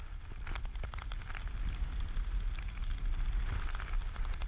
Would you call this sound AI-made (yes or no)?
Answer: no